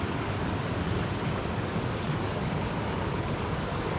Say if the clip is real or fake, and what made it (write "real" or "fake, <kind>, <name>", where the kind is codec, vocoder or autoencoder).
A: fake, codec, DAC